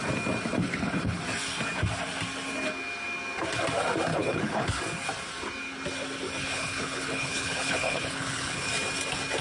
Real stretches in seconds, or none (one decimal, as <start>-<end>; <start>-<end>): 0.0-0.6; 1.2-4.1; 4.8-6.4; 8.7-9.4